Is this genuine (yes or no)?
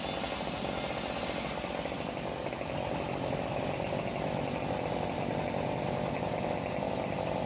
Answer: yes